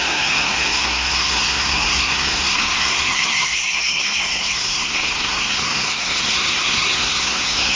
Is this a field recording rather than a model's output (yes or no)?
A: no